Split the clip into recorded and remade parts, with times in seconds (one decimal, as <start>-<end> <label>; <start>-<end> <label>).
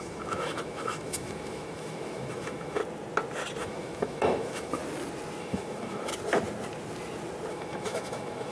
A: 0.0-2.8 remade; 2.8-3.6 recorded; 3.6-4.8 remade; 4.8-5.4 recorded; 5.4-6.1 remade; 6.1-7.5 recorded; 7.5-8.5 remade